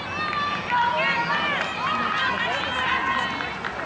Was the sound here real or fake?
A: real